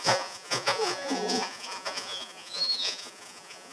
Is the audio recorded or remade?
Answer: remade